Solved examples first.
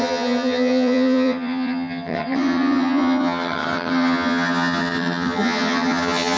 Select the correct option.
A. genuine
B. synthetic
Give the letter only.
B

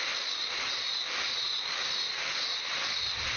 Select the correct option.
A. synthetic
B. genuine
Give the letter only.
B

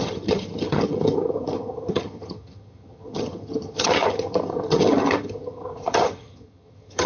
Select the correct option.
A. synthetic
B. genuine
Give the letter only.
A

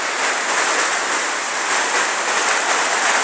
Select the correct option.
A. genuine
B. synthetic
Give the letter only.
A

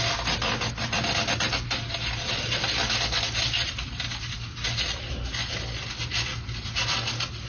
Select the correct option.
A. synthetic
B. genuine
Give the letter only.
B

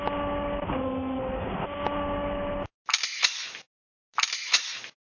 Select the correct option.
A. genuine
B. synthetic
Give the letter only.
A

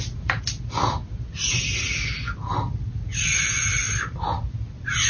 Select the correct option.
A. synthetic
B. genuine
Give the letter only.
B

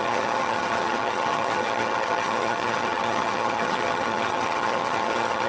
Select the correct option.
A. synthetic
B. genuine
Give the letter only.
A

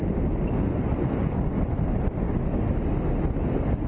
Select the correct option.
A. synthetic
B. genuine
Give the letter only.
B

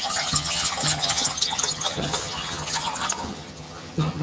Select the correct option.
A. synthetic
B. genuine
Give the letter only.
A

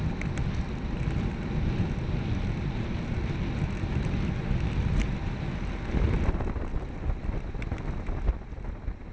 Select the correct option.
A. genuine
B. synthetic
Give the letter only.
A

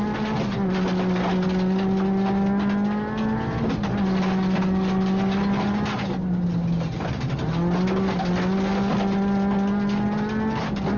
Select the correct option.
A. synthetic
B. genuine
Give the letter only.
B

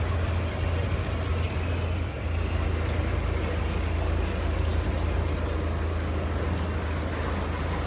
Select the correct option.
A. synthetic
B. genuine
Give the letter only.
B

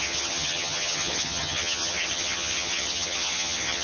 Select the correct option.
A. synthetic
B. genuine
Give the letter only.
A